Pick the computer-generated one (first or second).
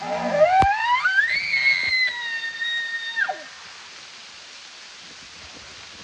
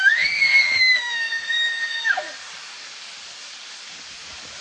second